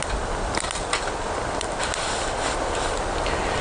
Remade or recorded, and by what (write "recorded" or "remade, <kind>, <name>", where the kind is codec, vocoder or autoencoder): recorded